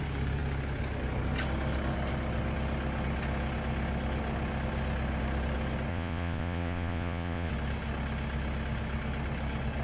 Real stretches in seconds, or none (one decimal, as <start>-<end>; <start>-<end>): 0.0-5.9; 7.5-9.8